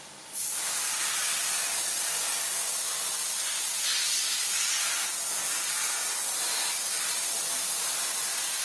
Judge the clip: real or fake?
real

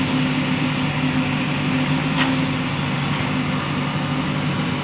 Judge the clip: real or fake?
real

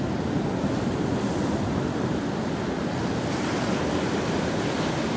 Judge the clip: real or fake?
real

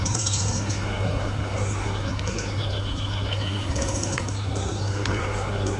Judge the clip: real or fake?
fake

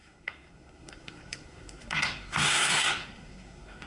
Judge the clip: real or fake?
fake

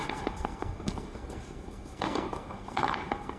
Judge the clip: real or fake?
fake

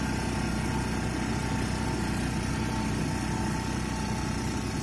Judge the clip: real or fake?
real